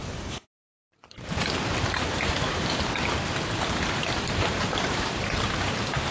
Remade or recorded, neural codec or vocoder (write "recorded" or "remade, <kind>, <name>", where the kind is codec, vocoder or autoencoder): remade, vocoder, BigVGAN v2